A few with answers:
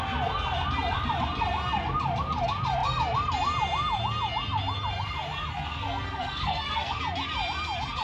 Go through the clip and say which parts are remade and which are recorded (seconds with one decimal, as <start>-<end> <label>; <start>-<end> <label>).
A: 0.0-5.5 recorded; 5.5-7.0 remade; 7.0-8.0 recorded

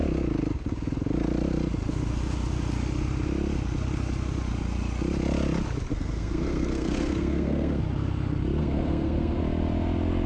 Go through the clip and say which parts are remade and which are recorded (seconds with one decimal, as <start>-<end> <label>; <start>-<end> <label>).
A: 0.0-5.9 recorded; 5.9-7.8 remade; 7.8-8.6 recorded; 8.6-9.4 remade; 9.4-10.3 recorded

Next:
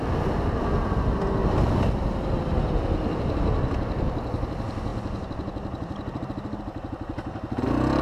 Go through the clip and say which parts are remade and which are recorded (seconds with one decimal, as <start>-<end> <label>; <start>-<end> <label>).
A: 0.0-8.0 recorded

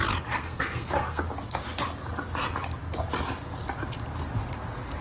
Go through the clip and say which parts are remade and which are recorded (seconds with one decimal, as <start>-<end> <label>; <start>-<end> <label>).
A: 0.0-0.4 recorded; 0.4-1.2 remade; 1.2-5.0 recorded